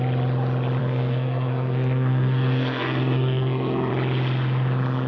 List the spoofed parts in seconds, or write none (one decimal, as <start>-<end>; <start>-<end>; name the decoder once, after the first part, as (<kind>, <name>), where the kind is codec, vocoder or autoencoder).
0.8-3.9 (codec, SNAC)